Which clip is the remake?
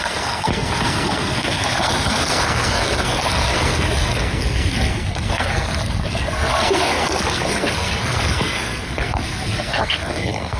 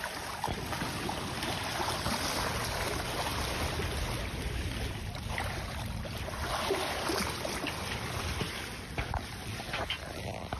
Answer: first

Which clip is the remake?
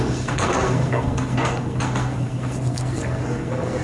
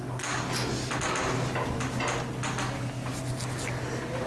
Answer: first